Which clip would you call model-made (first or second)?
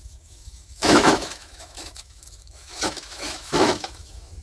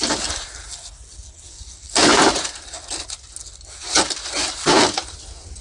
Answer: first